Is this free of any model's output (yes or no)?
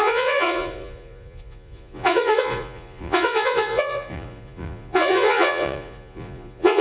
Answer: no